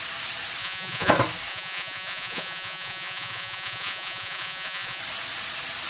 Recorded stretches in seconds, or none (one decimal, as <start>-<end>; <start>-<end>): 0.0-0.6; 1.1-1.5; 5.0-5.9